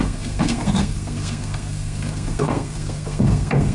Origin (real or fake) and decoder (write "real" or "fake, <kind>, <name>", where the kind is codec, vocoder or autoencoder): fake, codec, SNAC